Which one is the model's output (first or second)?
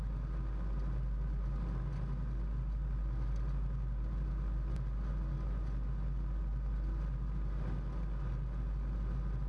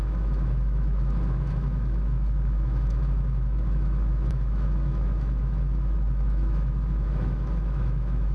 second